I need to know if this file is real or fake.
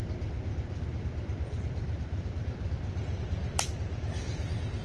real